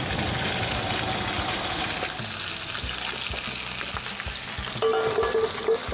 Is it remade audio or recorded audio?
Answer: recorded